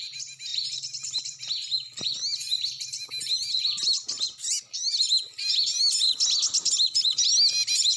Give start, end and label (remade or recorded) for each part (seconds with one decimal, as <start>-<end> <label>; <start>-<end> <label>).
0.0-0.5 recorded; 0.5-1.2 remade; 1.2-8.0 recorded